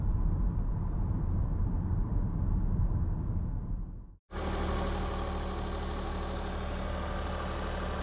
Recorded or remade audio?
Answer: recorded